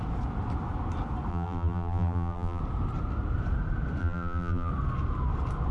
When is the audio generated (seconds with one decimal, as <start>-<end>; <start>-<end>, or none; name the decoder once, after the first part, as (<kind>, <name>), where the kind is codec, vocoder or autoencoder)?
1.3-2.6 (vocoder, BigVGAN v2); 4.0-4.7